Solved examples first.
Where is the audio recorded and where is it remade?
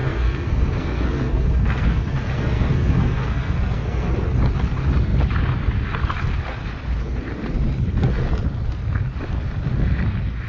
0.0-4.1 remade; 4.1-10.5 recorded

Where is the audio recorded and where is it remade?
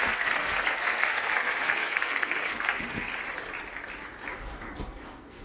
0.0-3.1 remade; 3.1-4.3 recorded; 4.3-5.4 remade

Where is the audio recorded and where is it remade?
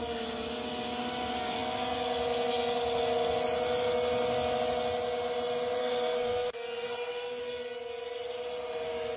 0.0-5.8 recorded; 5.8-7.4 remade; 7.4-9.2 recorded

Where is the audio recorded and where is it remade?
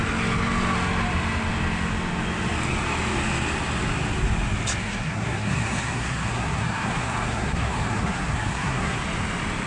0.0-4.8 recorded; 4.8-9.0 remade; 9.0-9.7 recorded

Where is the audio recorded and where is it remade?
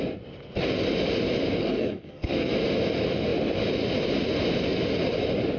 0.0-1.6 recorded; 1.6-2.5 remade; 2.5-5.6 recorded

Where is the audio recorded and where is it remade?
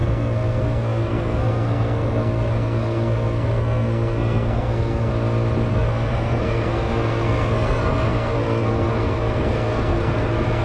0.0-5.1 remade; 5.1-5.7 recorded; 5.7-10.6 remade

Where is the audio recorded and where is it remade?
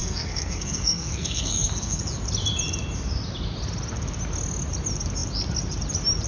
0.0-2.0 remade; 2.0-6.3 recorded